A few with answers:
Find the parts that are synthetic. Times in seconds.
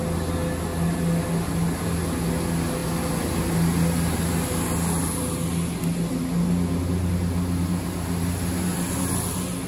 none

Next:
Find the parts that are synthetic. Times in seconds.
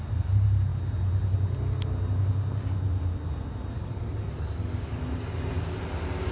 4.3-4.9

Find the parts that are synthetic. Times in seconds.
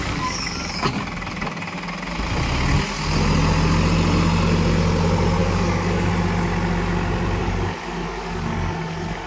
0.0-1.0; 5.4-6.1; 7.4-9.3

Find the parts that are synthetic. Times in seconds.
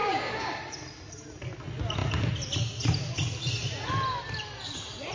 0.0-0.6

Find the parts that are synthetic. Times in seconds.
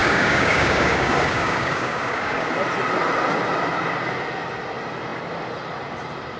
0.0-2.5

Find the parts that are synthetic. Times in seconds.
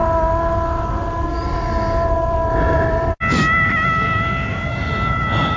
none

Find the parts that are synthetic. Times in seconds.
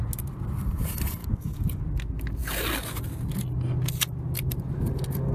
1.2-1.8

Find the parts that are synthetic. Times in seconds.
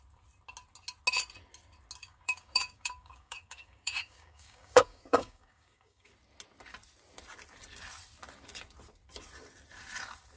2.0-6.1